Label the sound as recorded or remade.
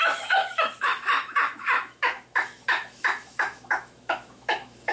remade